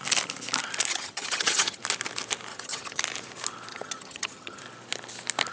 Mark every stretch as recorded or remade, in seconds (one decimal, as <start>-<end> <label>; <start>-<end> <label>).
0.0-0.9 recorded; 0.9-1.8 remade; 1.8-2.5 recorded; 2.5-3.0 remade; 3.0-3.7 recorded; 3.7-4.6 remade; 4.6-5.5 recorded